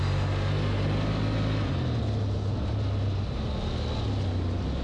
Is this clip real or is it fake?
real